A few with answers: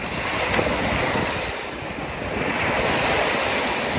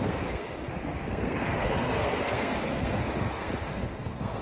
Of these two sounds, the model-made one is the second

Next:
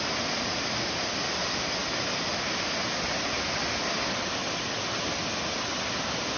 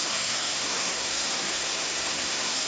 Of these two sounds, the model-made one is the second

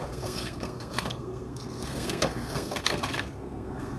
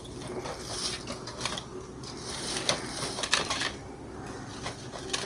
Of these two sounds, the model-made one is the first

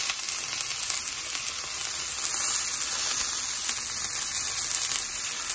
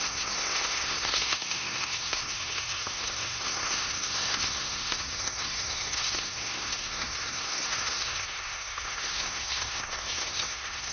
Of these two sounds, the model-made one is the second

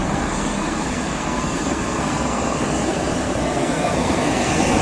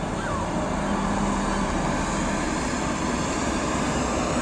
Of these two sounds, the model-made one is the first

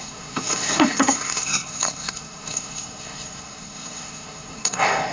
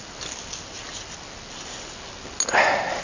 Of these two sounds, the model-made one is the first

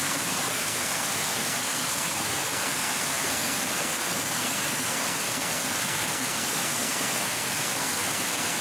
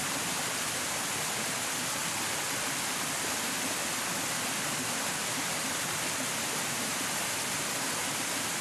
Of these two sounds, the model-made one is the first